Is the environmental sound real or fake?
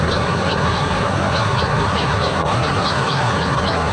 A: fake